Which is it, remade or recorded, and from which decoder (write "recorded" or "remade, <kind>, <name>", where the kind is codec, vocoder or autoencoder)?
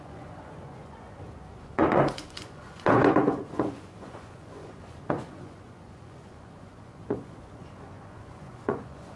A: remade, vocoder, Vocos